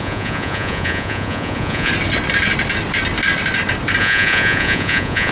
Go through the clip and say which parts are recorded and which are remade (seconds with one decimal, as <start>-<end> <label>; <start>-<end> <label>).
0.0-1.9 remade; 1.9-4.0 recorded; 4.0-5.3 remade